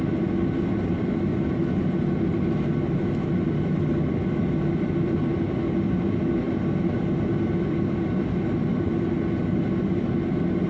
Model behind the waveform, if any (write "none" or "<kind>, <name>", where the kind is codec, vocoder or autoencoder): none